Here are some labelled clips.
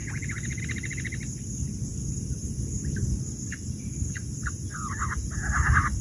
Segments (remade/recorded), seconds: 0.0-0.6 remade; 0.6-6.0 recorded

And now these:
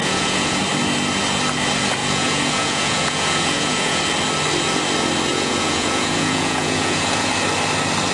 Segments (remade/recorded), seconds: 0.0-0.6 remade; 0.6-2.0 recorded; 2.0-4.0 remade; 4.0-5.3 recorded; 5.3-7.3 remade; 7.3-8.1 recorded

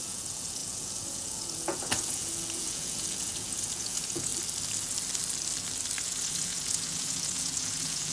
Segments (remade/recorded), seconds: 0.0-4.3 remade; 4.3-6.0 recorded; 6.0-8.1 remade

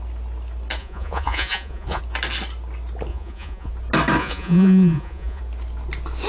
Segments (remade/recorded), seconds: 0.0-0.8 recorded; 0.8-2.0 remade; 2.0-3.1 recorded; 3.1-3.7 remade; 3.7-4.2 recorded; 4.2-5.4 remade; 5.4-6.3 recorded

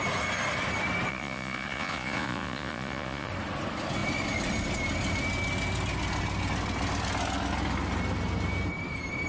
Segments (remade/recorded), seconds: 0.0-1.1 recorded; 1.1-3.3 remade; 3.3-9.3 recorded

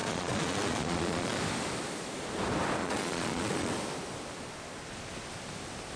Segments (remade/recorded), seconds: 0.0-1.4 remade; 1.4-2.8 recorded; 2.8-3.7 remade; 3.7-6.0 recorded

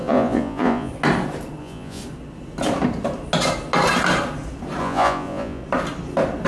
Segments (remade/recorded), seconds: 0.0-0.9 remade; 0.9-1.6 recorded; 1.6-2.0 remade; 2.0-4.8 recorded; 4.8-5.6 remade; 5.6-6.5 recorded

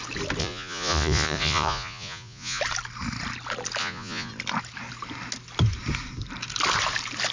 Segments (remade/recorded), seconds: 0.0-0.4 recorded; 0.4-2.6 remade; 2.6-3.8 recorded; 3.8-4.3 remade; 4.3-7.3 recorded